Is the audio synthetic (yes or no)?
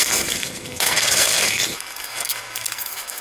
yes